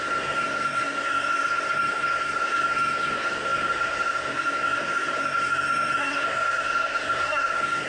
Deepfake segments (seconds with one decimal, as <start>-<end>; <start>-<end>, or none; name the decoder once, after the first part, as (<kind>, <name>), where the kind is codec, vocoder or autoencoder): 0.0-7.9 (codec, SNAC)